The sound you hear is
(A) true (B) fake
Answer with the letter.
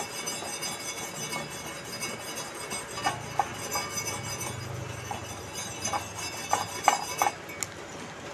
A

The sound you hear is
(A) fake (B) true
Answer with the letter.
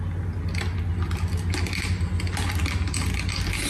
B